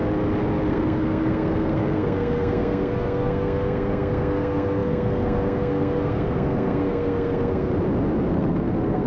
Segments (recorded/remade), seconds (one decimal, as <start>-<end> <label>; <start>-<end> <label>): 0.0-0.7 recorded; 0.7-7.7 remade; 7.7-8.3 recorded; 8.3-9.1 remade